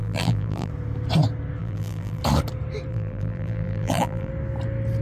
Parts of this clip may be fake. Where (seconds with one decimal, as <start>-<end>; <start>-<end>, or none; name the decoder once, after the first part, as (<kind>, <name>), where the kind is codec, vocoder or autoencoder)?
0.0-0.7 (vocoder, BigVGAN v2); 1.6-2.2; 2.9-4.3